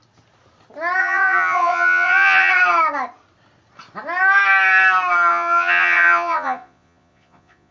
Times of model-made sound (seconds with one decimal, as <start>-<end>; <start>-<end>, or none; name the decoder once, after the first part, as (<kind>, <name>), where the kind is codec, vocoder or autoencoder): 1.0-2.5 (vocoder, Vocos); 5.3-7.7